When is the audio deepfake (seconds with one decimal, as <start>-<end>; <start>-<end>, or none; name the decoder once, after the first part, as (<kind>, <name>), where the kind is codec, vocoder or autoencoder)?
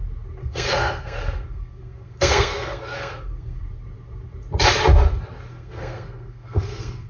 0.4-3.6 (codec, SNAC); 5.5-7.1